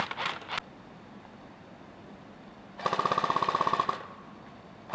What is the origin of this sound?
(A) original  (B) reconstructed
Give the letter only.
A